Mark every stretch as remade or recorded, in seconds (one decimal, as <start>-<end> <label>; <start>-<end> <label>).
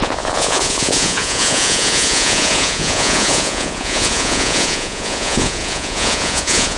0.0-6.8 remade